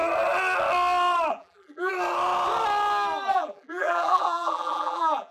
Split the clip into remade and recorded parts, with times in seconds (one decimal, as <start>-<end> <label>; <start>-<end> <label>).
0.0-1.3 recorded; 1.3-1.9 remade; 1.9-3.3 recorded; 3.3-5.3 remade